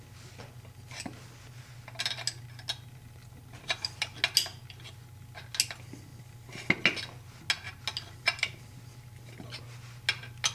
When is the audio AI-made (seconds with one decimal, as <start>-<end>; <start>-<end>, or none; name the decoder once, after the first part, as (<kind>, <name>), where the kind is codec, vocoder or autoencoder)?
3.2-4.0 (vocoder, BigVGAN v2)